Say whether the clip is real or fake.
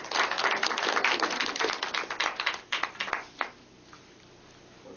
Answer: real